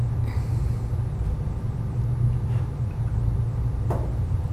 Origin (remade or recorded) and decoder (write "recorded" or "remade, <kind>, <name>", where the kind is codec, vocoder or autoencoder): recorded